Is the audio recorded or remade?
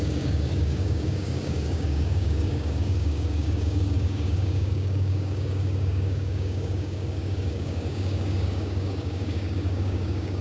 remade